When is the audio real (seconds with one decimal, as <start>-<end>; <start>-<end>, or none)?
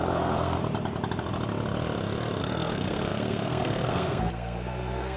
0.6-2.4